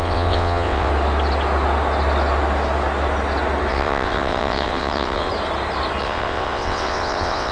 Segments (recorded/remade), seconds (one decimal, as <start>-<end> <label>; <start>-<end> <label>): 0.0-0.9 remade; 0.9-3.7 recorded; 3.7-5.3 remade; 5.3-6.0 recorded; 6.0-7.5 remade